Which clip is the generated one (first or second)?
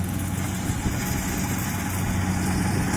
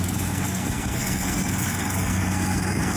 second